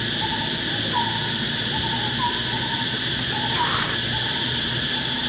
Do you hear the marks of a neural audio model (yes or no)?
no